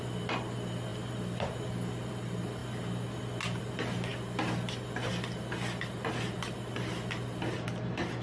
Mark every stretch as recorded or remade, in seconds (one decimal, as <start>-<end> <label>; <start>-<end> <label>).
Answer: 0.0-8.2 recorded